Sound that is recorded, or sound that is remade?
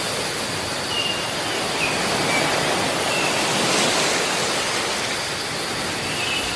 recorded